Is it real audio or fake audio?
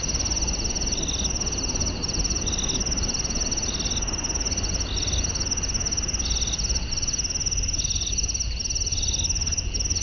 real